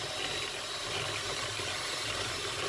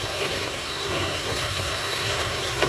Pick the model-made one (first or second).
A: second